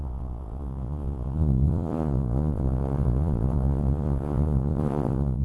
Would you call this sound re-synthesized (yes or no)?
yes